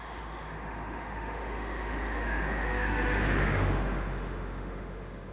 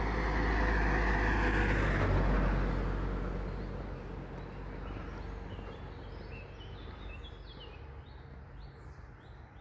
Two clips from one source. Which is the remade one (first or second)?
first